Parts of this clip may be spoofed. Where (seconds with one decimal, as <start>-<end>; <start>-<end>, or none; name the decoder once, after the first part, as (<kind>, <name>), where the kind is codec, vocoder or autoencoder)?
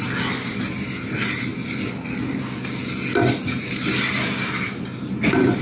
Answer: none